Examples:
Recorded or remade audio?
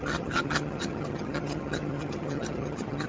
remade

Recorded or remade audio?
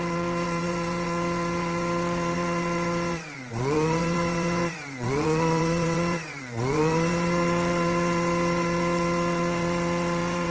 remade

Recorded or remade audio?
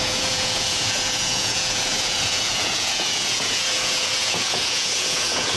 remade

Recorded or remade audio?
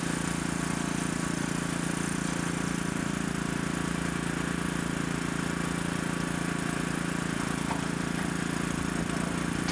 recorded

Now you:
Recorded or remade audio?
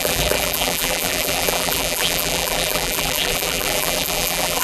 remade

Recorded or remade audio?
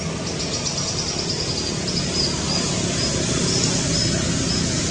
recorded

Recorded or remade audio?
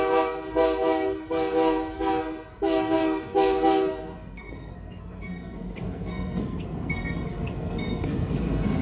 remade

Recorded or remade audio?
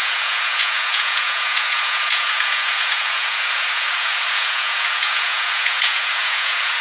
remade